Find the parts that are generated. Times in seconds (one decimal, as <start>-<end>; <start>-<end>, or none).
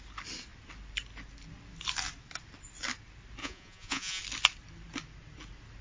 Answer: 3.4-4.2